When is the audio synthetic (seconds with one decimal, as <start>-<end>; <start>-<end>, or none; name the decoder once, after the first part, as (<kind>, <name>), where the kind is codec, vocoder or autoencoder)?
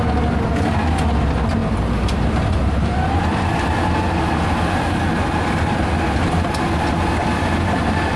1.6-2.6 (vocoder, BigVGAN v2)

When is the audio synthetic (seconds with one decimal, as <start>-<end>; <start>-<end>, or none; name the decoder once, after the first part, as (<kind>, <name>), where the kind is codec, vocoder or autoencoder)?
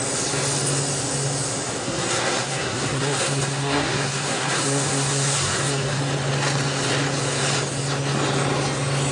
1.8-6.0 (codec, SNAC)